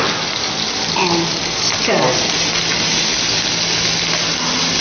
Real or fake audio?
real